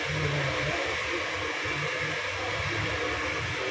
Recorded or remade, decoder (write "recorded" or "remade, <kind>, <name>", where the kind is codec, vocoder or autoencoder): recorded